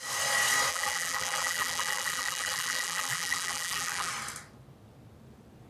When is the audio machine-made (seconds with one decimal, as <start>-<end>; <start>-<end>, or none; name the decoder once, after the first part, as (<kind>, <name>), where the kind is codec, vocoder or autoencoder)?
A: 0.7-4.1 (vocoder, BigVGAN v2)